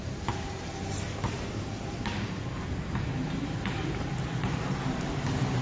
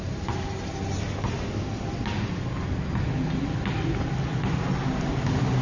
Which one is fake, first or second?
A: first